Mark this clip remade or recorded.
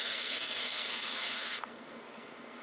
remade